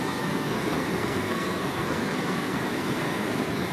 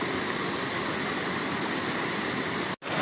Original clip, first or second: second